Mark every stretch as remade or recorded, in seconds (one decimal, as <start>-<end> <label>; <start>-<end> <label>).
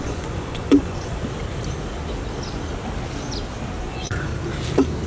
0.0-1.2 remade; 1.2-3.8 recorded; 3.8-4.3 remade; 4.3-5.1 recorded